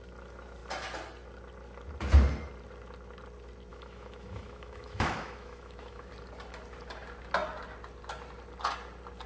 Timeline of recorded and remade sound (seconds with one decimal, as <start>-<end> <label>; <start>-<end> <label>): 0.0-3.7 recorded; 3.7-6.1 remade; 6.1-9.3 recorded